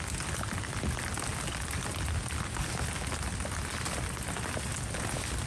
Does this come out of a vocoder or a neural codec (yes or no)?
no